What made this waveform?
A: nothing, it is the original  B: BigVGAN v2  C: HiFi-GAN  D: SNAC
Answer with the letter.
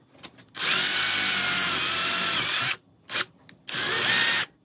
A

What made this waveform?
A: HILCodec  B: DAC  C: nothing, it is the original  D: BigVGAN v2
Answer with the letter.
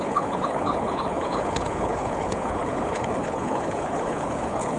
A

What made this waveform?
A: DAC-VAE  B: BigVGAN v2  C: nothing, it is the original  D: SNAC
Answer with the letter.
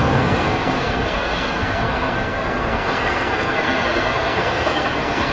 D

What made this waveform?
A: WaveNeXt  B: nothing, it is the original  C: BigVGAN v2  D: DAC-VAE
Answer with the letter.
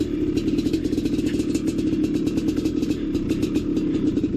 B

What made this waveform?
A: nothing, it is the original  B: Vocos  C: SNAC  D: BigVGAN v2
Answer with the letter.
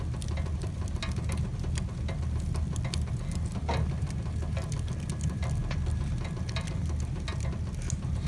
A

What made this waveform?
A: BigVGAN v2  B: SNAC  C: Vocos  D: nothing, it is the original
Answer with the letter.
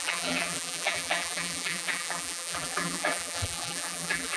A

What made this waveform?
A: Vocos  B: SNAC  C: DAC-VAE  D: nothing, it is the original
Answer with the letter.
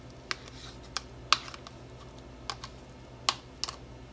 D